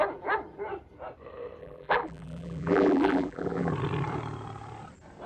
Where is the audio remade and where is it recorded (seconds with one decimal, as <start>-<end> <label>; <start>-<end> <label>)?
0.0-1.6 recorded; 1.6-3.7 remade; 3.7-5.3 recorded